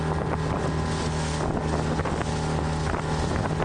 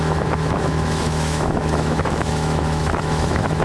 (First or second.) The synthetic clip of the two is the second